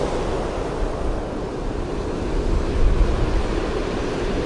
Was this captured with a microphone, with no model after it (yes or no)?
yes